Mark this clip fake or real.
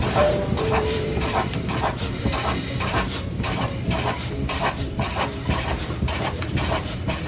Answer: fake